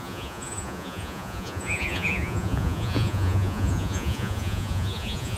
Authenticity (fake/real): fake